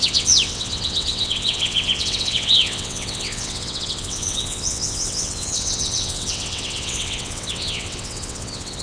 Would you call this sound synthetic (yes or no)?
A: yes